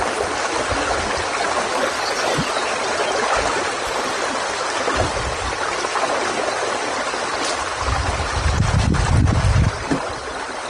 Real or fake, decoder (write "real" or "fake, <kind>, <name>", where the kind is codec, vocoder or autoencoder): real